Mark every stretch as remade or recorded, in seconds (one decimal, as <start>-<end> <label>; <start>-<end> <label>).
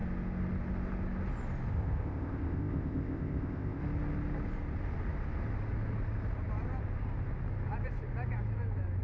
0.0-1.7 recorded; 1.7-3.8 remade; 3.8-9.0 recorded